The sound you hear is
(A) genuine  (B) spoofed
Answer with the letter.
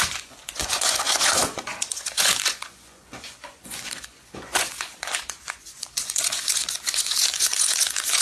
B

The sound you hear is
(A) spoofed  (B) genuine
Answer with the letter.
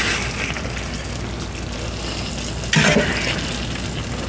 B